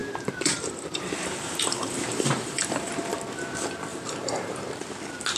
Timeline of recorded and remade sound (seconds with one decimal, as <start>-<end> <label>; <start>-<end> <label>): 0.0-3.2 remade; 3.2-3.9 recorded; 3.9-4.7 remade; 4.7-5.4 recorded